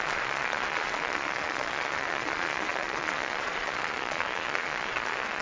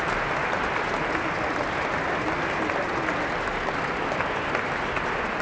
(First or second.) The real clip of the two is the second